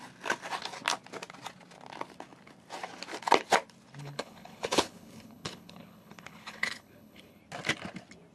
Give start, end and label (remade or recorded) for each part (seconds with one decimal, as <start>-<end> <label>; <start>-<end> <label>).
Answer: 0.0-4.0 recorded; 4.0-7.4 remade; 7.4-8.3 recorded